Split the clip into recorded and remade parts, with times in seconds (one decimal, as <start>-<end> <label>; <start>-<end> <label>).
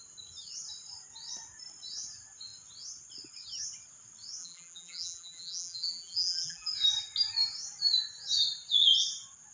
0.0-4.4 recorded; 4.4-6.7 remade; 6.7-9.5 recorded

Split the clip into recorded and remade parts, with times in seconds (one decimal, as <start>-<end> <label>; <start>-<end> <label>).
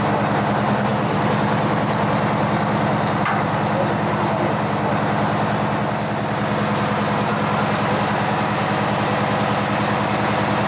0.0-0.9 recorded; 0.9-5.8 remade; 5.8-7.3 recorded; 7.3-8.0 remade; 8.0-10.7 recorded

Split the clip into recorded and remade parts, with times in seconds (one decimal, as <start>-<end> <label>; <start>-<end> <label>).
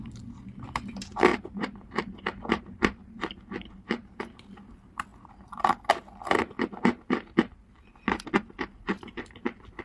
0.0-1.3 recorded; 1.3-4.2 remade; 4.2-9.8 recorded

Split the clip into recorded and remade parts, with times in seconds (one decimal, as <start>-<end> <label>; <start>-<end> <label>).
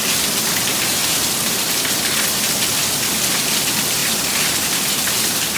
0.0-1.0 recorded; 1.0-1.8 remade; 1.8-5.6 recorded